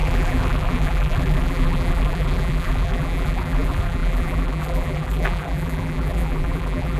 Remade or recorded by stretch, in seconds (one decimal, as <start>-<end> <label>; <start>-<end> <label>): 0.0-7.0 remade